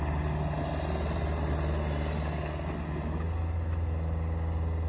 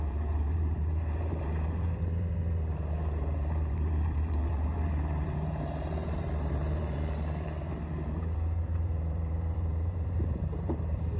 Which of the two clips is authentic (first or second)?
first